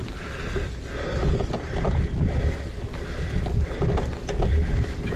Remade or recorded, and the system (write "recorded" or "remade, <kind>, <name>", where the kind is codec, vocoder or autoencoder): recorded